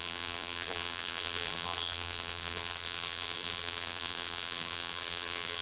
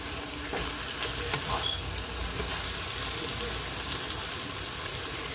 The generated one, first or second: first